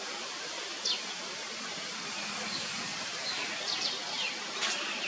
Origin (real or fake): real